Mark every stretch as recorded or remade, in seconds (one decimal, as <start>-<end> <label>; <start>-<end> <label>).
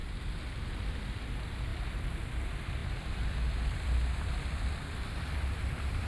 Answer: 0.0-0.7 recorded; 0.7-6.1 remade